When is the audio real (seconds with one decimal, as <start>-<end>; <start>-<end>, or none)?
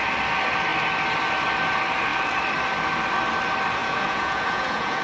0.0-3.8